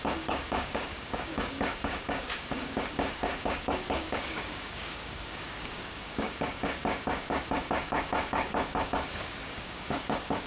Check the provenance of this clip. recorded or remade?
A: remade